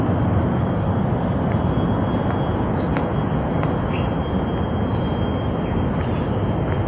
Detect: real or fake real